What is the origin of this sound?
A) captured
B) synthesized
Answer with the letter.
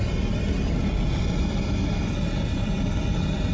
A